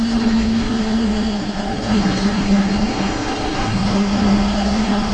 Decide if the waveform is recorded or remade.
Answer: remade